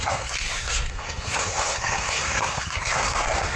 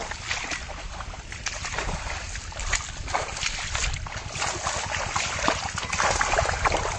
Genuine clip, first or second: second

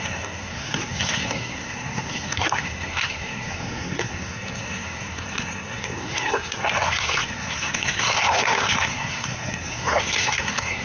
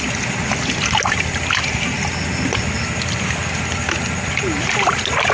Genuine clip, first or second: second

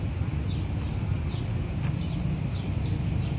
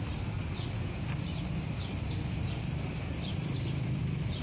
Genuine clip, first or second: first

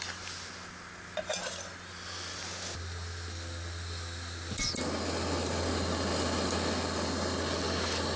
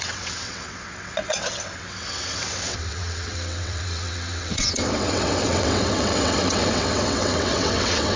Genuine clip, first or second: first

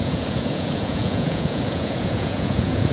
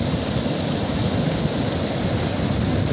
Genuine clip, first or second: second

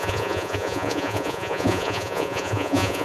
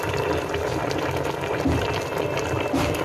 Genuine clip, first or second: second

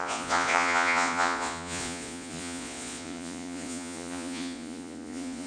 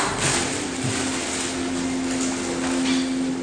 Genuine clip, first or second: second